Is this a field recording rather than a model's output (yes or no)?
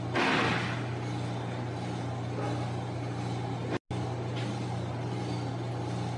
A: yes